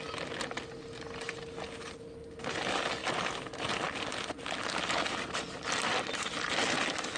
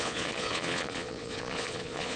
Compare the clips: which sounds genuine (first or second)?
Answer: first